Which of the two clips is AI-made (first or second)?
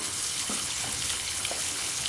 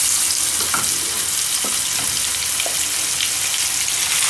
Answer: first